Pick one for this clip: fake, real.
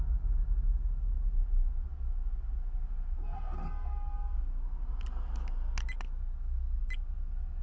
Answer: real